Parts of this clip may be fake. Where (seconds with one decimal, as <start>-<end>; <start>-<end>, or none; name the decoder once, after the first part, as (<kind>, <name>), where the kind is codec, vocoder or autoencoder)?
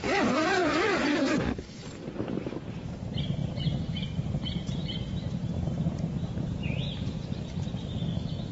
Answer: 0.0-8.5 (vocoder, BigVGAN v2)